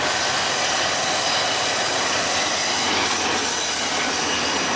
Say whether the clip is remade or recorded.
recorded